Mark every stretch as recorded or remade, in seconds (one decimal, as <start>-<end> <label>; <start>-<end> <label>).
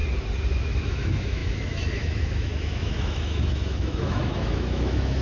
0.0-0.6 recorded; 0.6-5.2 remade